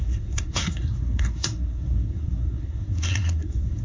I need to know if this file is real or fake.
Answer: fake